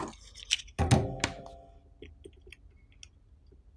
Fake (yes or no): no